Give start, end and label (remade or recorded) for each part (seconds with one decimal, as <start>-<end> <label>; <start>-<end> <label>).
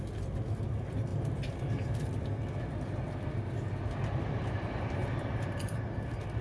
0.0-6.4 recorded